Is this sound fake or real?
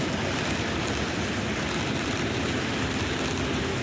real